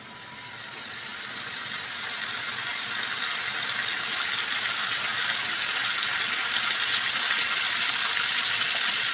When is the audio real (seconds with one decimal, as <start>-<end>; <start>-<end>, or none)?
0.0-9.1